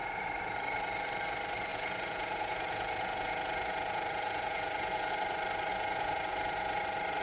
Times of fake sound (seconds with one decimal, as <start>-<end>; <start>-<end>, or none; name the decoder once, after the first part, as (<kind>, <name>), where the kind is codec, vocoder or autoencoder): 1.7-5.1 (vocoder, Vocos); 5.7-6.8